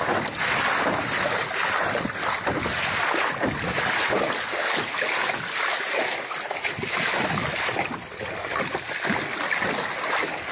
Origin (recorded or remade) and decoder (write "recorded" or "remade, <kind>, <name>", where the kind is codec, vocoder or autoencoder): recorded